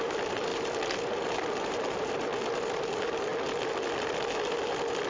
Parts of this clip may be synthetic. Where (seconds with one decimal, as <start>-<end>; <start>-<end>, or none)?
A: none